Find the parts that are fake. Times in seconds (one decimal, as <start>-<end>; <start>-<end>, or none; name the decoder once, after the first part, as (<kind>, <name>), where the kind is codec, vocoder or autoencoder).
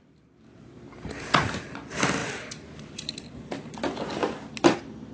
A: 2.2-3.1 (vocoder, BigVGAN v2)